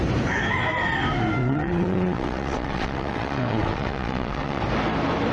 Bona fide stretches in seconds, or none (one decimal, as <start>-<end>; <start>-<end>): 0.0-1.4; 4.6-5.3